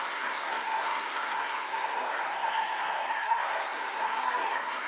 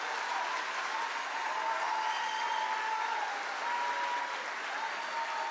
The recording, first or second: second